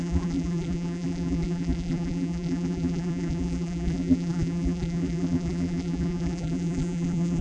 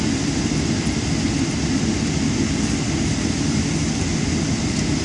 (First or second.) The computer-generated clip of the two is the first